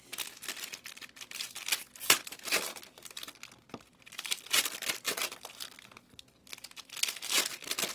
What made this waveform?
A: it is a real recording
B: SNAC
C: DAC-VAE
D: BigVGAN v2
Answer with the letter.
A